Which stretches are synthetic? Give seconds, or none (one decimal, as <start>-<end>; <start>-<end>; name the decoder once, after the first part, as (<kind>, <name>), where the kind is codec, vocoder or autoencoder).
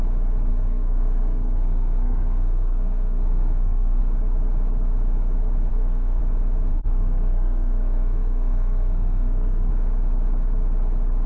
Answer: 0.5-4.0 (codec, SNAC); 5.7-6.2; 6.7-9.7